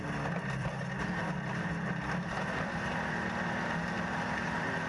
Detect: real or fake fake